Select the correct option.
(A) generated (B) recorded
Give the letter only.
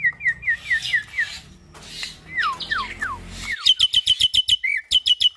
B